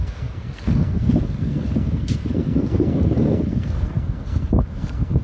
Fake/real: fake